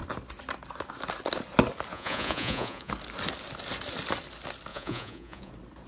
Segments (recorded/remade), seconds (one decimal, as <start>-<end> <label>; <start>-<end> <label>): 0.0-1.9 recorded; 1.9-2.9 remade; 2.9-4.7 recorded; 4.7-5.5 remade; 5.5-5.9 recorded